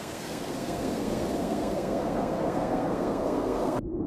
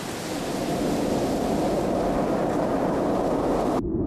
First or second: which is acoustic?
second